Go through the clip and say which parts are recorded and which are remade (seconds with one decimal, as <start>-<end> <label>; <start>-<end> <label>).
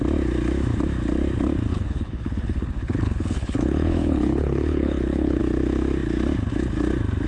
0.0-1.7 recorded; 1.7-5.4 remade; 5.4-7.3 recorded